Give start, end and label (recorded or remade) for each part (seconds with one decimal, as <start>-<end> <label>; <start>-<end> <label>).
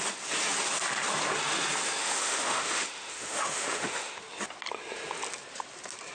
0.0-2.0 recorded; 2.0-4.2 remade; 4.2-6.1 recorded